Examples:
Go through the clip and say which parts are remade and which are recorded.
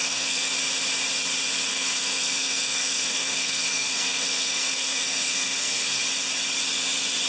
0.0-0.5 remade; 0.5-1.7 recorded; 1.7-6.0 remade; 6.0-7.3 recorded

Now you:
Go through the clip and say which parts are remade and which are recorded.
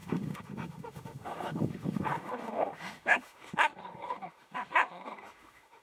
0.0-5.8 remade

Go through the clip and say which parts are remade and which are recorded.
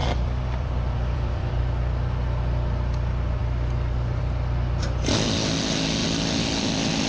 0.0-1.6 remade; 1.6-7.1 recorded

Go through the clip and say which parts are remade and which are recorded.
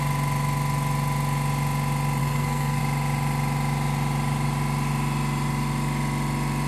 0.0-2.2 recorded; 2.2-2.8 remade; 2.8-6.7 recorded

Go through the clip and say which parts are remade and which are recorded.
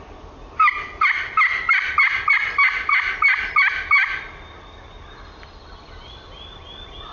0.0-7.1 recorded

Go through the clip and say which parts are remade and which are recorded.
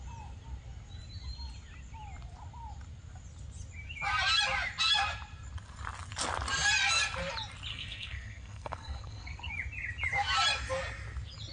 0.0-7.7 recorded; 7.7-9.5 remade; 9.5-11.5 recorded